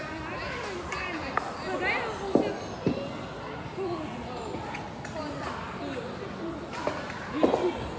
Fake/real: real